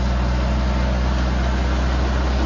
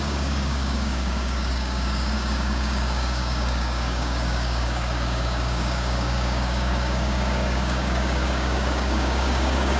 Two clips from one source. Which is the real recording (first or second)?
first